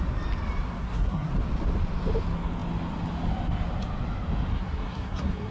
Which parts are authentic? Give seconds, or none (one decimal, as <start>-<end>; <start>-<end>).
0.0-0.8; 1.3-4.5